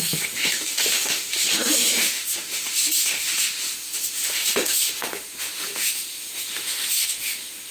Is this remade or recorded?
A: remade